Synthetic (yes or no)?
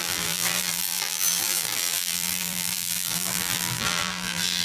yes